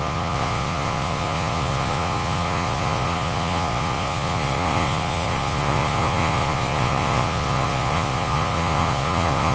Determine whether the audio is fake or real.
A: fake